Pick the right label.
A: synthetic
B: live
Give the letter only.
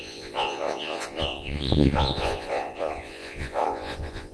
A